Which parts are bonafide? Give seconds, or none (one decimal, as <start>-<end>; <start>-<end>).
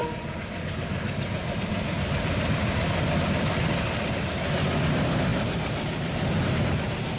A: 4.3-5.3; 6.4-7.2